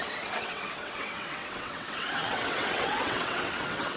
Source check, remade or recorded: remade